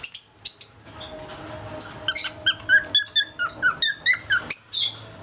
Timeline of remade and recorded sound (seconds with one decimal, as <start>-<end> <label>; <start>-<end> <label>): 0.0-5.2 recorded